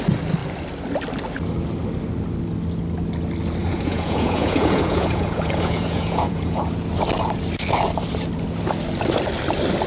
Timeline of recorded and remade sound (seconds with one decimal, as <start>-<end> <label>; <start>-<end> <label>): 0.0-3.6 recorded; 3.6-6.6 remade; 6.6-9.9 recorded